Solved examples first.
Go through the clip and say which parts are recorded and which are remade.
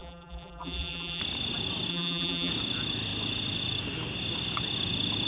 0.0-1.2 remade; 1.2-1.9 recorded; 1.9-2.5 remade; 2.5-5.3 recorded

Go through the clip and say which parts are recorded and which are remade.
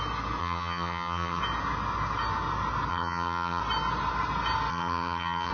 0.0-0.4 recorded; 0.4-1.4 remade; 1.4-2.9 recorded; 2.9-3.6 remade; 3.6-4.7 recorded; 4.7-5.5 remade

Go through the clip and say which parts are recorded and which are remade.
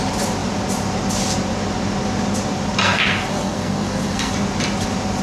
0.0-2.8 recorded; 2.8-4.3 remade; 4.3-5.2 recorded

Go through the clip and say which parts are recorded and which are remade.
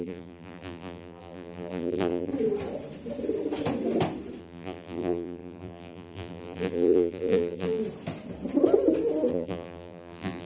0.0-2.3 remade; 2.3-4.4 recorded; 4.4-7.8 remade; 7.8-9.3 recorded; 9.3-10.5 remade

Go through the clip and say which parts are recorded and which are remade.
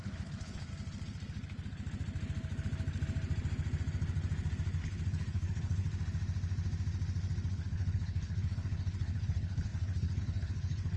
0.0-0.7 remade; 0.7-4.8 recorded; 4.8-5.9 remade; 5.9-7.5 recorded; 7.5-11.0 remade